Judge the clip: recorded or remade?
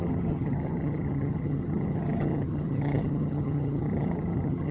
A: remade